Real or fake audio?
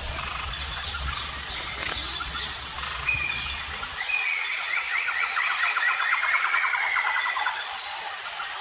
fake